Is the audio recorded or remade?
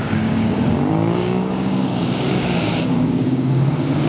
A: remade